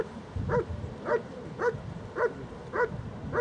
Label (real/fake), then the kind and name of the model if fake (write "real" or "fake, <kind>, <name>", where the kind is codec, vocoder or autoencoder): real